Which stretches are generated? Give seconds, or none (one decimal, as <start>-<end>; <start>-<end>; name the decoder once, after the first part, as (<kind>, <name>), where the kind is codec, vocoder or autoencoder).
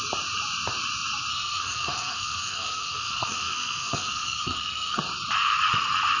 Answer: 1.3-5.0 (codec, SNAC)